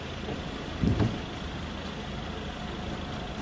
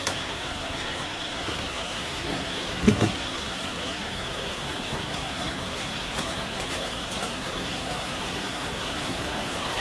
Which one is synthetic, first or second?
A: second